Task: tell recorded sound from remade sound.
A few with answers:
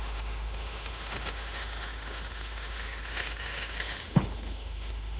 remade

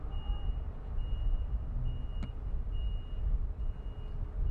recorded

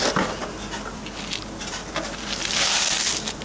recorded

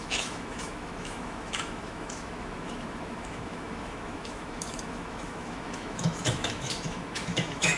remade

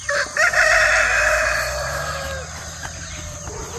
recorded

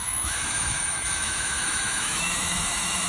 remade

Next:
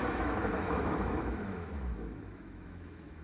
remade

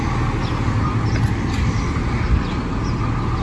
recorded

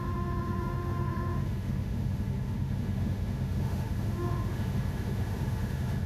remade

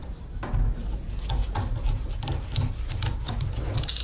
recorded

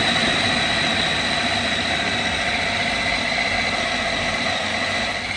recorded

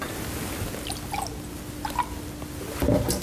recorded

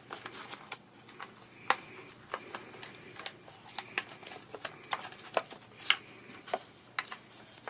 recorded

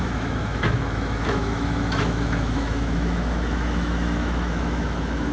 remade